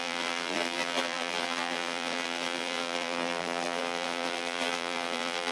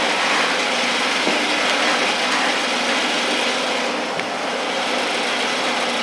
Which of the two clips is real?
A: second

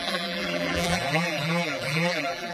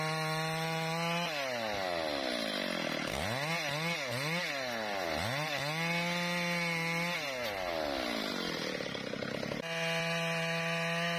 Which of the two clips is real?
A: second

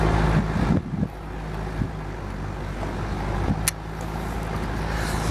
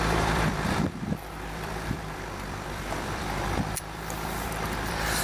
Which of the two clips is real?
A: first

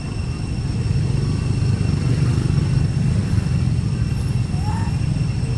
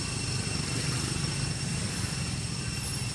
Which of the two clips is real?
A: first